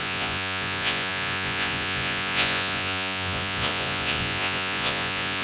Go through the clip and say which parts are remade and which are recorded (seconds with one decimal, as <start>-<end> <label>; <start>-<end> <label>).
0.0-5.4 remade